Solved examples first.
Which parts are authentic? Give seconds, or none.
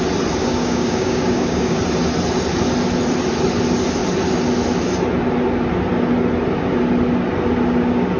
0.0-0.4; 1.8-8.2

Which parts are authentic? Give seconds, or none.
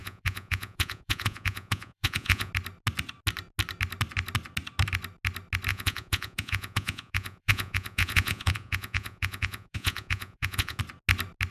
2.5-5.7; 10.8-11.5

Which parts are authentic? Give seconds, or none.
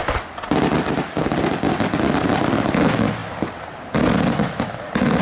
0.0-5.2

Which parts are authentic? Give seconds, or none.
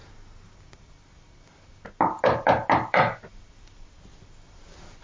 0.0-5.0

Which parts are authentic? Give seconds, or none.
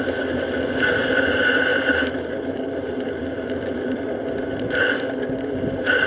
0.0-1.7; 4.0-6.1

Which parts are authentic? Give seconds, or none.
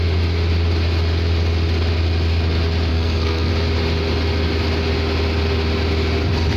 0.0-2.9; 3.5-6.6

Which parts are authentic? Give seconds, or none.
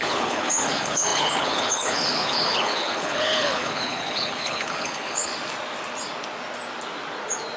5.3-7.6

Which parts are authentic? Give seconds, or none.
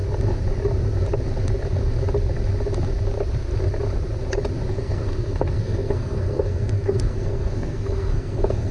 0.0-4.7